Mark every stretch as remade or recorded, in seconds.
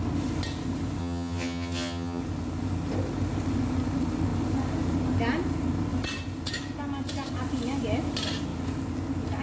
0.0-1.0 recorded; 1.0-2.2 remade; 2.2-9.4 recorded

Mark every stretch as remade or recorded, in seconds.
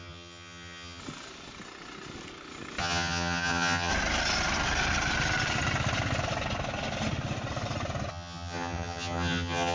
0.0-1.0 remade; 1.0-2.8 recorded; 2.8-3.9 remade; 3.9-8.1 recorded; 8.1-9.7 remade